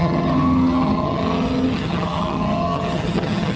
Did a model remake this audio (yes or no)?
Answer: yes